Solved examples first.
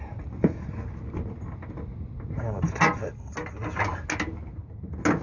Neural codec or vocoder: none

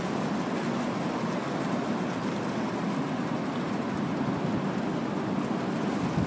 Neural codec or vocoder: none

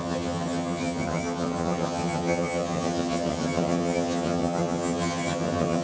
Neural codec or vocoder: vocoder, HiFi-GAN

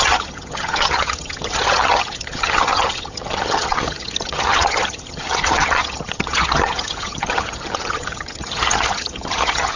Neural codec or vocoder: vocoder, HiFi-GAN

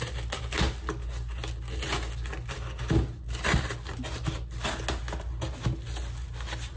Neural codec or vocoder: none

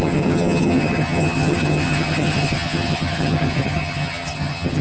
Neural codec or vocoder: vocoder, HiFi-GAN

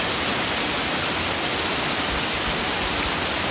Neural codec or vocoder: none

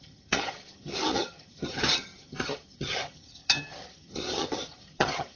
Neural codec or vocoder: vocoder, HiFi-GAN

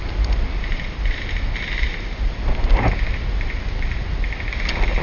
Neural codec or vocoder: none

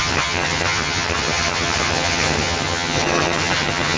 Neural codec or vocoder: vocoder, HiFi-GAN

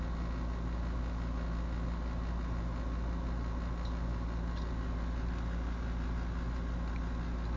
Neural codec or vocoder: none